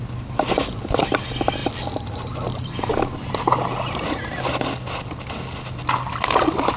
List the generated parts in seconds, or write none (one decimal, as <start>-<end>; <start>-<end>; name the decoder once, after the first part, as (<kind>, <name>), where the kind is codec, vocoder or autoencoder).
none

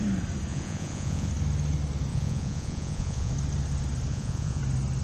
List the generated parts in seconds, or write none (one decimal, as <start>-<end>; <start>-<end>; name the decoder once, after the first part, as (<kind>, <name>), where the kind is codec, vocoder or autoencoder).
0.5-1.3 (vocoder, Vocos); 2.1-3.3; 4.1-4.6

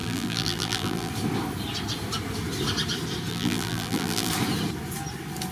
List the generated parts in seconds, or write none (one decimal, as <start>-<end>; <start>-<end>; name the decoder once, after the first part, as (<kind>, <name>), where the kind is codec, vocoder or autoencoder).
0.0-1.1 (vocoder, BigVGAN v2); 3.3-4.3

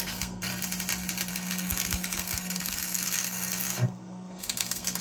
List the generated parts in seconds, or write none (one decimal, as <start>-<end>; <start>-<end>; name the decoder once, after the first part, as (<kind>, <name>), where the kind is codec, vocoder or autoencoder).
0.0-0.5 (codec, SNAC); 1.3-5.0

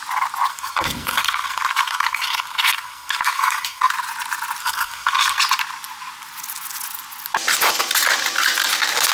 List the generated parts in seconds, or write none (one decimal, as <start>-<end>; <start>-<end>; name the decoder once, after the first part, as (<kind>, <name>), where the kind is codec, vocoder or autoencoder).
0.5-3.9 (codec, SNAC); 4.6-5.4

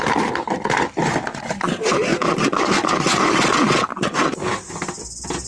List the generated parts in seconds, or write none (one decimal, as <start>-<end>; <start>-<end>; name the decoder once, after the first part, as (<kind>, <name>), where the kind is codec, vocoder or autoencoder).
none